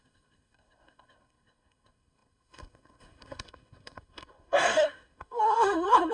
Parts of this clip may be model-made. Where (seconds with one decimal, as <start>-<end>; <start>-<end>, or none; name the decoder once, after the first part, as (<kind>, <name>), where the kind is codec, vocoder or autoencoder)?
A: 0.0-6.1 (codec, SNAC)